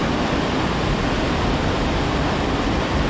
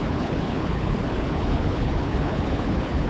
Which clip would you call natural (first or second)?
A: first